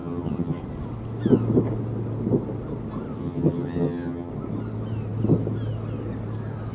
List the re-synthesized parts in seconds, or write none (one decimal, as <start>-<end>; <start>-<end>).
0.0-0.6; 3.2-4.3